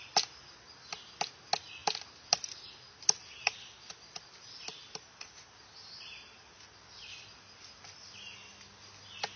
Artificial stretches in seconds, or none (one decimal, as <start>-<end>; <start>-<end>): none